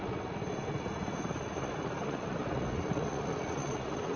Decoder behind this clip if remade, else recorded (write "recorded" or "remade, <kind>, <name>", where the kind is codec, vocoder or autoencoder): remade, vocoder, Vocos